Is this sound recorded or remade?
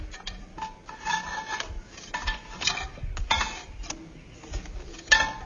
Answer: recorded